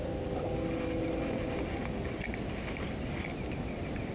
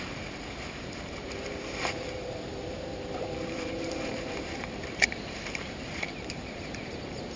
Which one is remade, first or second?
second